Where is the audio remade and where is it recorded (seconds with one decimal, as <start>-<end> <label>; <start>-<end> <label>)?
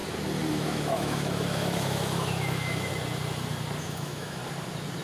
0.0-0.5 recorded; 0.5-2.9 remade; 2.9-3.8 recorded; 3.8-4.4 remade; 4.4-5.0 recorded